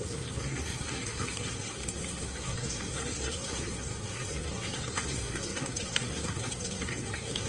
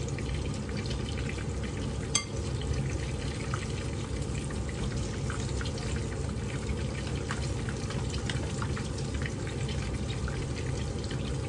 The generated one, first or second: first